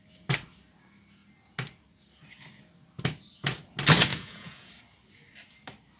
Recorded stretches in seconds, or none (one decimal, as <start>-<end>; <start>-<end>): 0.0-4.1; 4.7-6.0